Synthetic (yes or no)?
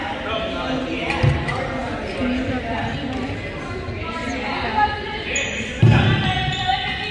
no